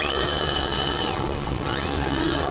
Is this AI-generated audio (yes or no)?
yes